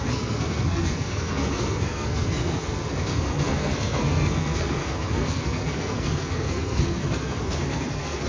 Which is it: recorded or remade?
remade